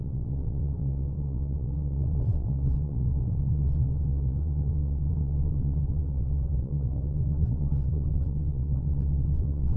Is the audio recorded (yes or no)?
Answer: no